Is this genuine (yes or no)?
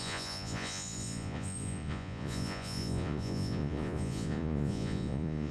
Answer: no